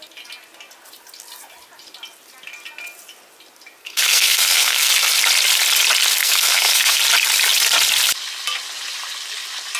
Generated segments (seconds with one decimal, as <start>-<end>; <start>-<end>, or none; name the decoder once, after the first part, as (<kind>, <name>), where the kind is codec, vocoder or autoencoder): 3.8-4.9 (codec, SNAC); 6.2-7.0